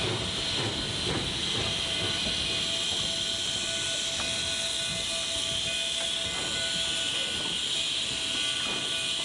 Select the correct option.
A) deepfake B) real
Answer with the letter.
B